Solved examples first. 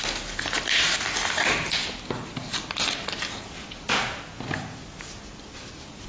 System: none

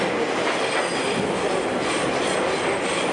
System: none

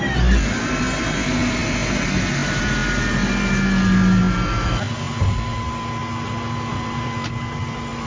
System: none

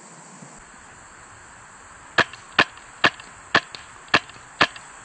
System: none